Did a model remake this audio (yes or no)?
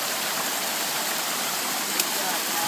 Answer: yes